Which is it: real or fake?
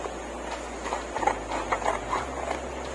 real